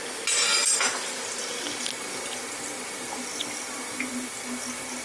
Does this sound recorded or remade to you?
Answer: recorded